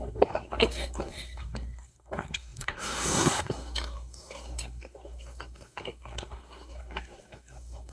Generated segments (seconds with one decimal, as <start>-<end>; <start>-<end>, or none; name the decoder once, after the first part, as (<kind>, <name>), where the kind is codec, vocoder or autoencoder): 0.0-7.9 (codec, SNAC)